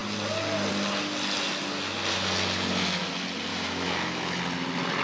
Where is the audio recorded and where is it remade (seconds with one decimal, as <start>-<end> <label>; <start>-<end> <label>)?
0.0-3.5 recorded; 3.5-4.4 remade; 4.4-5.0 recorded